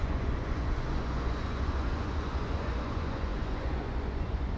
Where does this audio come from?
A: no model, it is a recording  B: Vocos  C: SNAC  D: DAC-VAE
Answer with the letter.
B